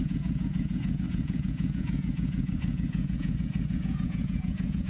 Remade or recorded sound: remade